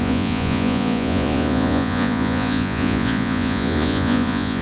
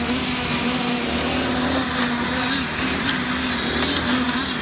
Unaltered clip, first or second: second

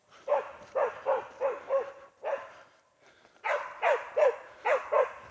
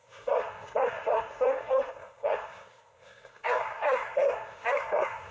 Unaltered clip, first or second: first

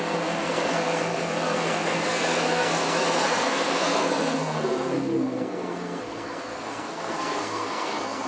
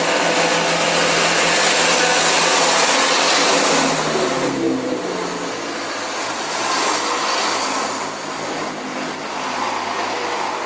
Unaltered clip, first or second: second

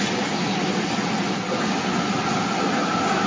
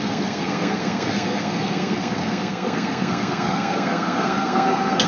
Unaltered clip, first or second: first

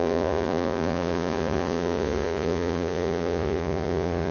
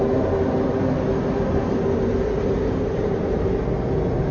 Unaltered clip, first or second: second